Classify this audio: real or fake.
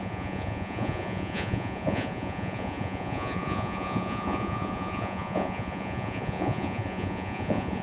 fake